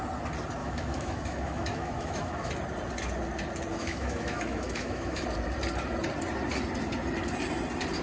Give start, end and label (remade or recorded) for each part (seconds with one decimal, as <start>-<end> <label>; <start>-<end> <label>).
0.0-0.6 recorded; 0.6-2.5 remade; 2.5-3.7 recorded; 3.7-5.2 remade; 5.2-8.0 recorded